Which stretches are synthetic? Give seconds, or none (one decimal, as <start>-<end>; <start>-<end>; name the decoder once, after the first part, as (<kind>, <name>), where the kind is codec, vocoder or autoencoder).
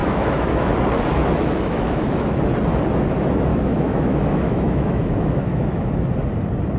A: 0.0-0.7 (autoencoder, DAC-VAE); 1.1-2.4; 3.5-5.9